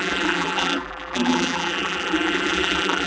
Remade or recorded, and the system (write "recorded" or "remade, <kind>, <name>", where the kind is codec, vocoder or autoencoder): remade, vocoder, BigVGAN v2